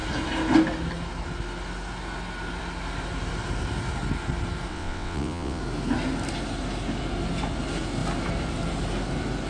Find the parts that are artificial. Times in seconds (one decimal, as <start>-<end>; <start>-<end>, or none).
4.7-5.6